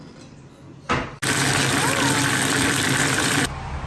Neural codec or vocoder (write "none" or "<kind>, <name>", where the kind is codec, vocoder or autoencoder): none